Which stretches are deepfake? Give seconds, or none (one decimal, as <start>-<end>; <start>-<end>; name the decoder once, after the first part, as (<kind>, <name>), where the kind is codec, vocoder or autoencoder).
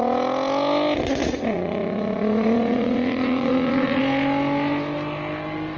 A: 1.2-4.0 (vocoder, Vocos)